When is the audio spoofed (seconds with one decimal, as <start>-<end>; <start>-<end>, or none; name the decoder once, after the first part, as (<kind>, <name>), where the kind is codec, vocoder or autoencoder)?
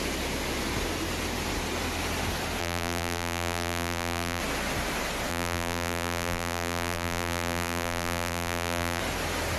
2.6-4.4 (vocoder, BigVGAN v2); 5.3-9.0